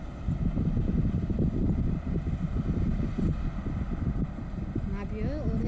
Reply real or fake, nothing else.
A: real